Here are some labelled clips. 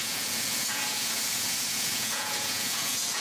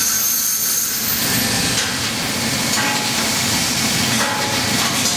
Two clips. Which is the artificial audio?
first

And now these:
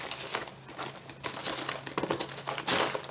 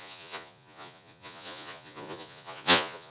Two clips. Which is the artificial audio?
second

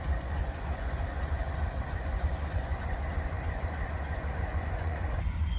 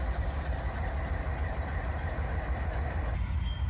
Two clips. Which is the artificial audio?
first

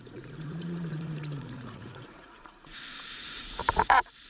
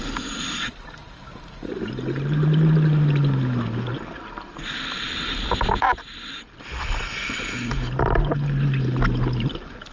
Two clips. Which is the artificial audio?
first